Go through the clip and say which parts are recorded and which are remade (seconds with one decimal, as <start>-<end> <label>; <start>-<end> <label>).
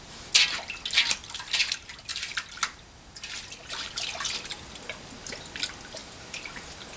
0.0-2.1 recorded; 2.1-2.6 remade; 2.6-6.0 recorded; 6.0-6.5 remade; 6.5-7.0 recorded